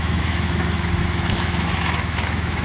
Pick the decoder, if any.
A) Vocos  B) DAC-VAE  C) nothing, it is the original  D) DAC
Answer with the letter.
B